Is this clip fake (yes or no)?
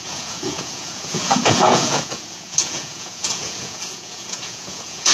yes